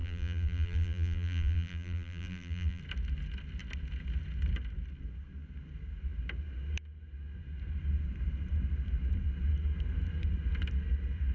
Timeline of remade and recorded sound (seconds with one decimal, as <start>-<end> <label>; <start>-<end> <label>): 0.0-2.8 remade; 2.8-11.3 recorded